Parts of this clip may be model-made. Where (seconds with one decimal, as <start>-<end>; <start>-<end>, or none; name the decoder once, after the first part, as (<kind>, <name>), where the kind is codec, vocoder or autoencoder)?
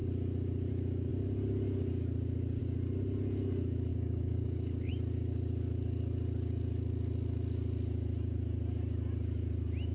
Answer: 3.9-4.9 (codec, DAC)